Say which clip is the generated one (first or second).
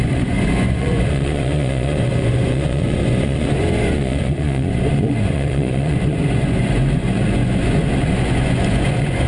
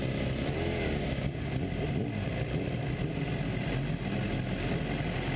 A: first